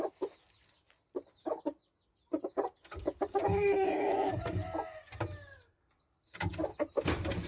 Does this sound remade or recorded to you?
recorded